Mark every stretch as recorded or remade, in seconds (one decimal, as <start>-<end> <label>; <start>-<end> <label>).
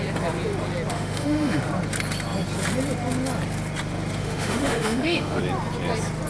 0.0-0.9 recorded; 0.9-1.6 remade; 1.6-4.2 recorded; 4.2-5.4 remade; 5.4-6.3 recorded